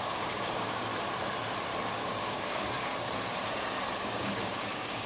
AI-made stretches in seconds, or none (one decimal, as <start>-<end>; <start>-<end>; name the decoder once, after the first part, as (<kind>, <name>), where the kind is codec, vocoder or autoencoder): 0.0-0.9 (codec, DAC); 1.9-2.9; 4.0-5.1